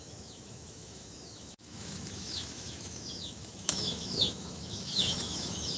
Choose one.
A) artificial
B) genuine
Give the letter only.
A